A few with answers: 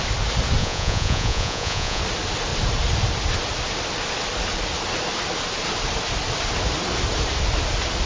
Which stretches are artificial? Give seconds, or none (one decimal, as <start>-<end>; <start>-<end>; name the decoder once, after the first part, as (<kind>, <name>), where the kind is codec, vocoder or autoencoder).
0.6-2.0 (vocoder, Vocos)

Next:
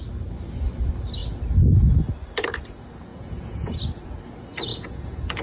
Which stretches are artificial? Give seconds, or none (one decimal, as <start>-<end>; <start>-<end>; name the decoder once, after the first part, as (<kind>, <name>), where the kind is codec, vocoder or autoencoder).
3.1-3.8 (vocoder, Vocos); 4.7-5.4

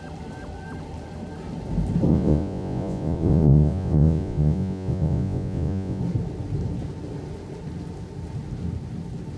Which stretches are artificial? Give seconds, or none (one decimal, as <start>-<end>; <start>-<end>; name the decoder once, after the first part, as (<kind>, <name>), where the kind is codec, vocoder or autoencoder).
2.1-6.0 (vocoder, Vocos)

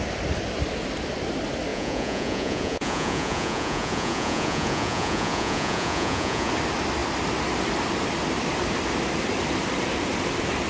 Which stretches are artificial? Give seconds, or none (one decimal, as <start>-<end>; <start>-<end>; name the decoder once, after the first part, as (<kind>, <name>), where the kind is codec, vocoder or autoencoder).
1.7-6.5 (vocoder, Vocos)

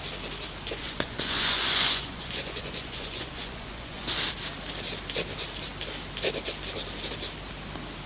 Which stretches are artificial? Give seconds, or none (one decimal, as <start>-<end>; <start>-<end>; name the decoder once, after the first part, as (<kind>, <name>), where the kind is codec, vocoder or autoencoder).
0.8-4.1 (vocoder, Vocos)

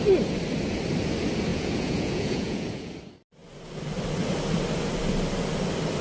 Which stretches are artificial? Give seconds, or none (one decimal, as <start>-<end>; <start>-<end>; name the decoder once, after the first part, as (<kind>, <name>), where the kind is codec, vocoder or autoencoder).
1.5-2.9 (vocoder, Vocos)

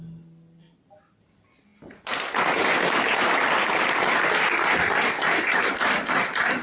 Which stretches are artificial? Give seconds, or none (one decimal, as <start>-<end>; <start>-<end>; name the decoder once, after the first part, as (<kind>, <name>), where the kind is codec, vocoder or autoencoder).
none